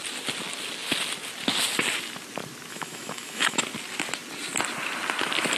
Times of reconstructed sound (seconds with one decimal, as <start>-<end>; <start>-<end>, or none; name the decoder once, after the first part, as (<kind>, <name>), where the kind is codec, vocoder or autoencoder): 2.7-3.6 (autoencoder, DAC-VAE)